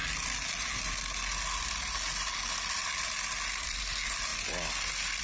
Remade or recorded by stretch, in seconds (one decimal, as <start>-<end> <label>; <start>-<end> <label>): 0.0-5.2 recorded